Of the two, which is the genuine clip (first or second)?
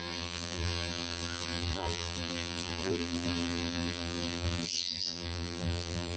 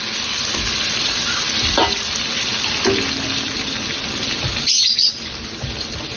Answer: second